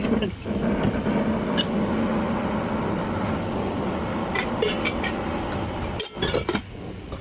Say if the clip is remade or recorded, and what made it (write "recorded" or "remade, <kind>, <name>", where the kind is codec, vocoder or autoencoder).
recorded